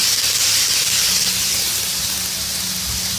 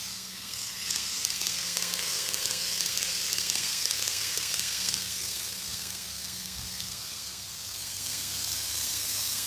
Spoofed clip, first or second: second